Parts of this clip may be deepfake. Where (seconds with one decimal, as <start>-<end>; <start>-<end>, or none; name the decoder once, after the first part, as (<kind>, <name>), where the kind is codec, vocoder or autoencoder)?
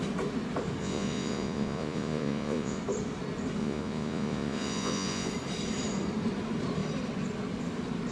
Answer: 0.8-2.8 (vocoder, Vocos); 3.6-5.3